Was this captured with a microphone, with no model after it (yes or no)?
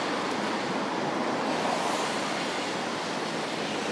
yes